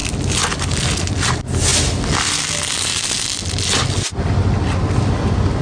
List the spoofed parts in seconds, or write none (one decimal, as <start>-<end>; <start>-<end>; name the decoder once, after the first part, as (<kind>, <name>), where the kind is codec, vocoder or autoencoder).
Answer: none